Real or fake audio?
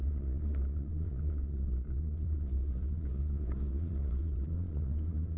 fake